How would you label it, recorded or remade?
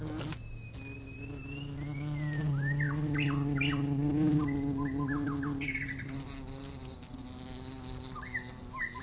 recorded